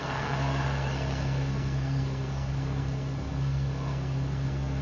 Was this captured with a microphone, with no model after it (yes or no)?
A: no